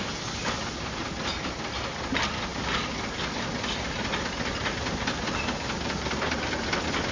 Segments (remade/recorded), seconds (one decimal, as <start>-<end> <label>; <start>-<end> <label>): 0.0-7.1 recorded